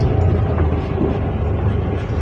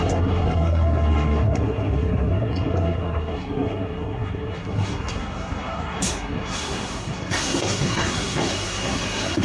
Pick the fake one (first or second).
second